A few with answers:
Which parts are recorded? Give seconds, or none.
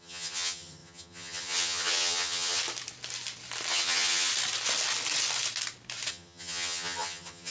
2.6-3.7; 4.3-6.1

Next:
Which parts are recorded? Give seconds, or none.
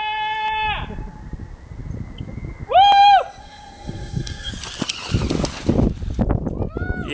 0.0-3.4; 4.5-7.1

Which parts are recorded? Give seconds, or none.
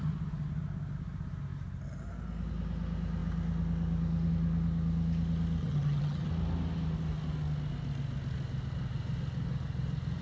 0.0-5.6; 6.3-10.2